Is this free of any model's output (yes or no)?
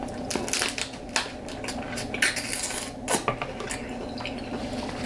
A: yes